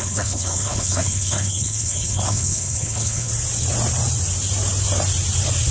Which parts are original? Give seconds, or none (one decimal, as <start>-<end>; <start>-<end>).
3.3-5.7